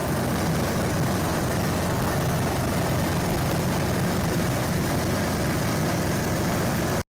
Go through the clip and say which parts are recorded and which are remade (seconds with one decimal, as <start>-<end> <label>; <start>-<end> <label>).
0.0-7.2 recorded

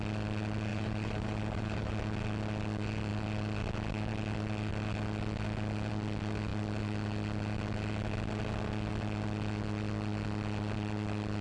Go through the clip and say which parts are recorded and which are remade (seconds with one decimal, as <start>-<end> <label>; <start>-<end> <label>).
0.0-0.7 recorded; 0.7-1.9 remade; 1.9-11.4 recorded

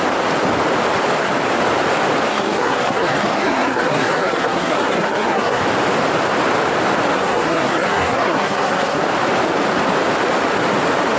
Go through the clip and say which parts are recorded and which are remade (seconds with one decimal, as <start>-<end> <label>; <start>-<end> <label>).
0.0-2.3 recorded; 2.3-5.6 remade; 5.6-7.1 recorded; 7.1-9.0 remade; 9.0-11.2 recorded

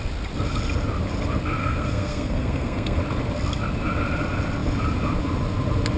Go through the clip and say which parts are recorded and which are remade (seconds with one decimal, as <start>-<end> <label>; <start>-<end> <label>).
0.0-1.6 recorded; 1.6-3.0 remade; 3.0-6.0 recorded